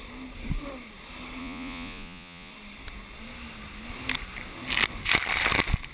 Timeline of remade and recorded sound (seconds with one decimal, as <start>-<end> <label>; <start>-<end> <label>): 0.0-1.4 recorded; 1.4-2.5 remade; 2.5-5.9 recorded